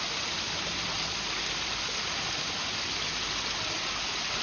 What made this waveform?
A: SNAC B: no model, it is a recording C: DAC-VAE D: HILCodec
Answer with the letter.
B